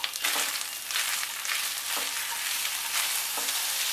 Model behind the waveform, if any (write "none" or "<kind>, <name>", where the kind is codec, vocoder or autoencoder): none